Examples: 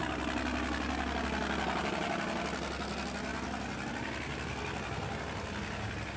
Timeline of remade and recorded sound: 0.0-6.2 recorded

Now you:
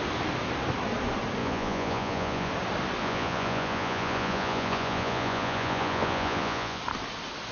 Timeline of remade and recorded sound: 0.0-1.4 recorded; 1.4-2.5 remade; 2.5-3.0 recorded; 3.0-6.8 remade; 6.8-7.5 recorded